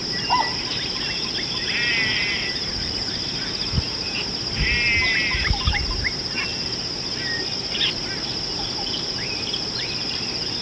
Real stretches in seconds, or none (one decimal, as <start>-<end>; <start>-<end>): none